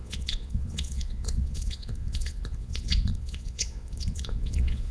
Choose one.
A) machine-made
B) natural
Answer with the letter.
A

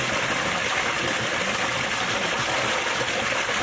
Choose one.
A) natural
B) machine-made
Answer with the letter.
A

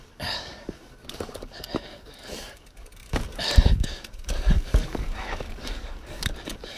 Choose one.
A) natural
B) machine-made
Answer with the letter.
B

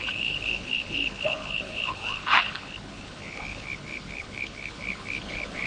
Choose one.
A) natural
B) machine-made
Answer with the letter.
B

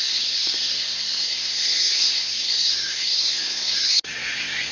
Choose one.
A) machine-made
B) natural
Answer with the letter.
A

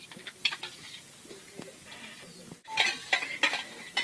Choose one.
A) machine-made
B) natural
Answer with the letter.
A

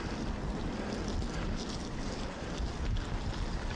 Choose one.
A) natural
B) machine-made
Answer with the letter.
A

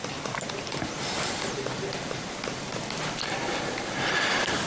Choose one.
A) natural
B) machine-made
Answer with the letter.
A